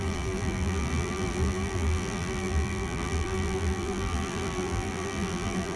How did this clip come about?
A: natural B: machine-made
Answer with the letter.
B